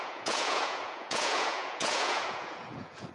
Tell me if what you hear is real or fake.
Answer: fake